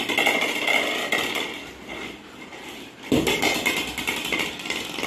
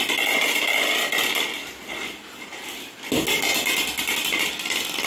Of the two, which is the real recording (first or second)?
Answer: second